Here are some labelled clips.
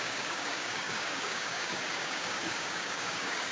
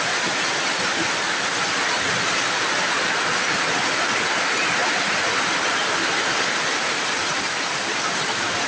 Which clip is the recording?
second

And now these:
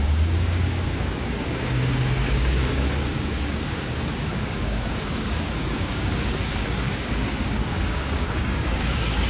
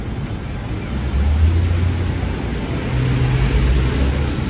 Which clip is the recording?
second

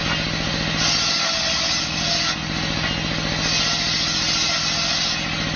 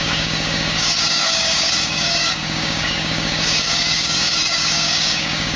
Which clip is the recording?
first